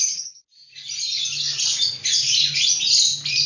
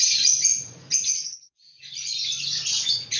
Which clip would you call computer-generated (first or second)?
second